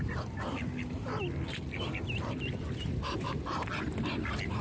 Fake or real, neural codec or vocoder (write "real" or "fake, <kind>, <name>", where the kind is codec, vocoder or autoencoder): fake, vocoder, BigVGAN v2